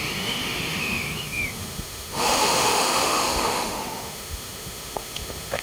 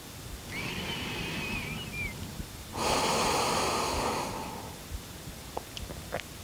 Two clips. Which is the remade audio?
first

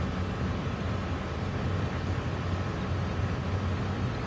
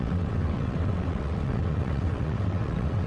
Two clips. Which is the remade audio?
second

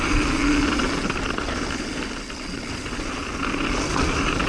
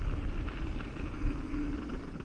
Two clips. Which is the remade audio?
second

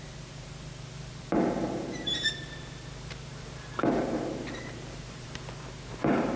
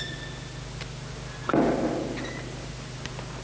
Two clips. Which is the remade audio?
first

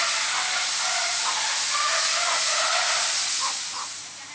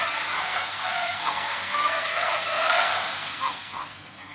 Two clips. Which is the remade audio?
second